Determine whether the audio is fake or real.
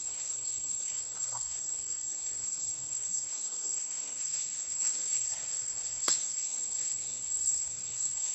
fake